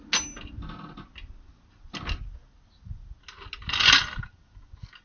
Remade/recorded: recorded